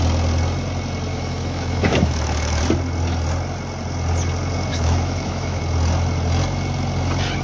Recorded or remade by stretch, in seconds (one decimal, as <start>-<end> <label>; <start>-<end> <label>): 0.0-1.1 recorded; 1.1-2.6 remade; 2.6-4.7 recorded; 4.7-5.6 remade; 5.6-7.4 recorded